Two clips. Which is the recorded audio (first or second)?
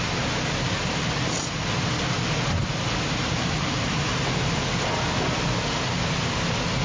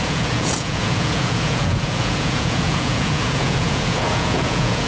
first